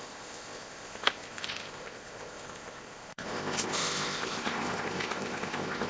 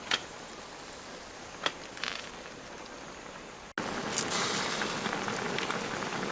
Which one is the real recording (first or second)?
second